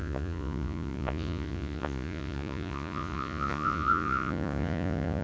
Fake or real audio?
fake